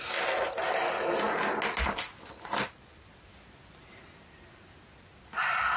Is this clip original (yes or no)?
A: yes